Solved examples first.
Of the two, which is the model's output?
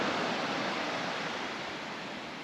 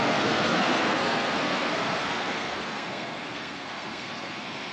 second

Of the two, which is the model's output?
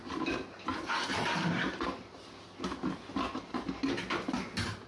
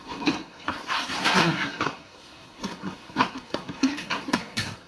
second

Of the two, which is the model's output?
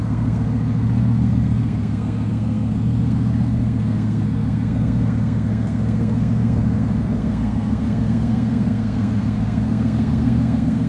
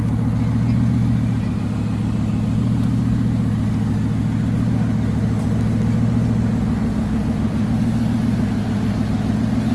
first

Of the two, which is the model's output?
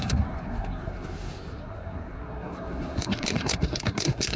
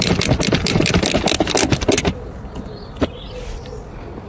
first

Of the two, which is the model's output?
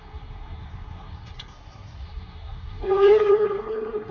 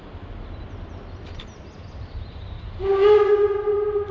first